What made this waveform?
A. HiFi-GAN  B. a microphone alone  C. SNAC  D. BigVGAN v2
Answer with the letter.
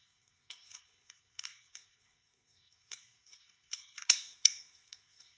C